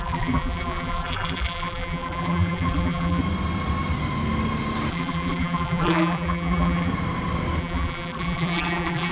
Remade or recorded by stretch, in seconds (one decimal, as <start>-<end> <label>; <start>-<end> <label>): 0.0-3.2 remade; 3.2-4.9 recorded; 4.9-6.9 remade; 6.9-7.6 recorded; 7.6-9.1 remade